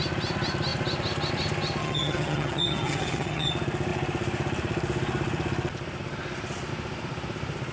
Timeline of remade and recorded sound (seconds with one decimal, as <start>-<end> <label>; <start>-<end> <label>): 0.0-1.8 recorded; 1.8-3.5 remade; 3.5-7.7 recorded